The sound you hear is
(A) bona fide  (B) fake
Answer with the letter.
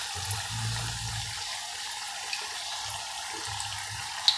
A